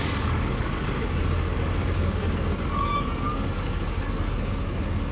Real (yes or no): no